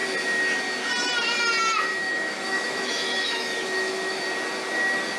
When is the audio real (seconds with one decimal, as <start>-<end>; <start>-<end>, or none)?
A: 0.0-1.9; 4.2-5.2